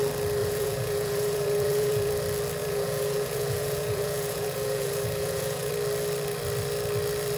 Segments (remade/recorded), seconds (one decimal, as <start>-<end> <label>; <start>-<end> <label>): 0.0-0.4 recorded; 0.4-2.1 remade; 2.1-2.6 recorded; 2.6-5.7 remade; 5.7-7.4 recorded